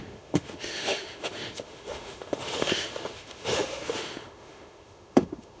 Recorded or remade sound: remade